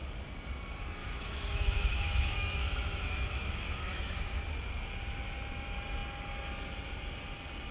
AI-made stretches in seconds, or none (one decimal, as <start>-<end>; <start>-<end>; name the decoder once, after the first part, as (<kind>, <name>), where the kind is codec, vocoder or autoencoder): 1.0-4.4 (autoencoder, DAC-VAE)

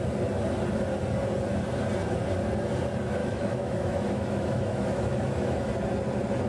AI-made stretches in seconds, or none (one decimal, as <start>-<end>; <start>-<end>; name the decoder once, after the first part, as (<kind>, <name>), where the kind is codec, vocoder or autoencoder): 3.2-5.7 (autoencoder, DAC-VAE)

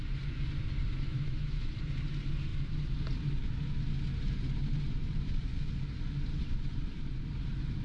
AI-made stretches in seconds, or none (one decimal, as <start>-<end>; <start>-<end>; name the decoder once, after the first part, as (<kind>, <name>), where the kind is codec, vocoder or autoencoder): 1.1-1.7 (autoencoder, DAC-VAE)

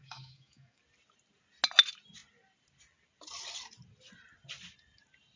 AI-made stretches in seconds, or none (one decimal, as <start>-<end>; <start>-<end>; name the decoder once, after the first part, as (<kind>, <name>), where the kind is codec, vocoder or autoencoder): 0.0-0.8 (autoencoder, DAC-VAE)